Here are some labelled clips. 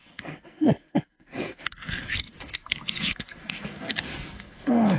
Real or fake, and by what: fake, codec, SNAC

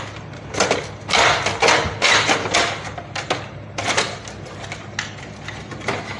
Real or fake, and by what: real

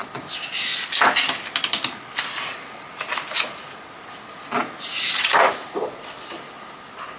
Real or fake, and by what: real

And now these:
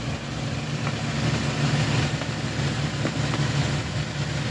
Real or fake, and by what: real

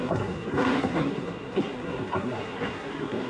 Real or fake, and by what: fake, codec, SNAC